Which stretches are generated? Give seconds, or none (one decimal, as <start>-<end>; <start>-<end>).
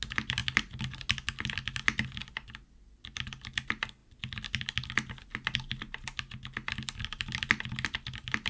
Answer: none